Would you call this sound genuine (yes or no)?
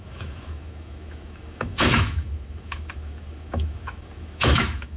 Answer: no